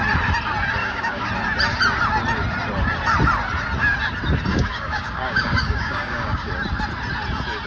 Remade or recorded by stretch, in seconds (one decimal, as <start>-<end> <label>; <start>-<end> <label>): 0.0-0.8 recorded; 0.8-1.3 remade; 1.3-4.5 recorded; 4.5-6.5 remade; 6.5-7.7 recorded